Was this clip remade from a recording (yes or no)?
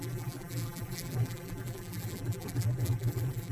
yes